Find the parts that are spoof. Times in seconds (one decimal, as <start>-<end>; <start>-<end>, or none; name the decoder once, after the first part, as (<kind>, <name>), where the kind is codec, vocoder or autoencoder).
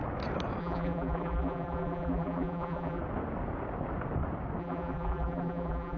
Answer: 0.6-3.0 (vocoder, BigVGAN v2); 4.6-6.0